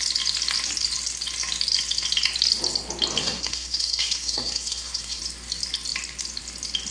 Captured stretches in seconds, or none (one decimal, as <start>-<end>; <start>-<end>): 0.0-3.2; 5.2-6.9